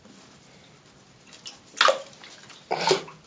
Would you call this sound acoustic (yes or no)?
yes